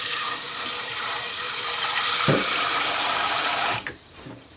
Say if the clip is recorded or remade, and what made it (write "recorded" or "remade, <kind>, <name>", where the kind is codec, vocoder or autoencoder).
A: remade, vocoder, BigVGAN v2